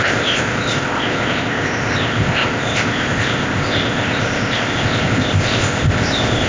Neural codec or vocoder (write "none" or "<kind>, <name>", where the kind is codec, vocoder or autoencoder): codec, ZipCodec